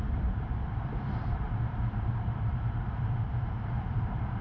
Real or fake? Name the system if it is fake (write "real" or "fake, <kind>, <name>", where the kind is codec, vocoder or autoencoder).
fake, vocoder, BigVGAN v2